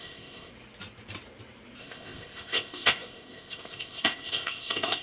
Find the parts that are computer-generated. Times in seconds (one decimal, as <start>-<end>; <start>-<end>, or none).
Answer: 0.0-0.5; 1.8-5.0